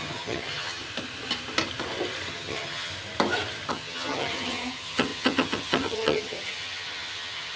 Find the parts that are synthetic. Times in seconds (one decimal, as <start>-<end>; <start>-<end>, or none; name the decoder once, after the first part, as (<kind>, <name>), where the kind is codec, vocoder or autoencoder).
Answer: 0.0-0.8 (vocoder, HiFi-GAN); 2.3-2.9; 3.7-7.6